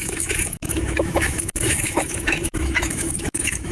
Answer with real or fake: fake